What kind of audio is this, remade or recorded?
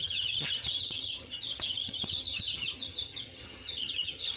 remade